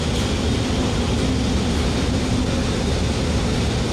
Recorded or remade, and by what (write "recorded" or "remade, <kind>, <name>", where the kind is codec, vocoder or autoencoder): recorded